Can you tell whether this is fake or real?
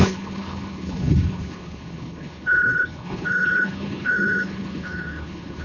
fake